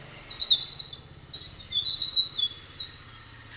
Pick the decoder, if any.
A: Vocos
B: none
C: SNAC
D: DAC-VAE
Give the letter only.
B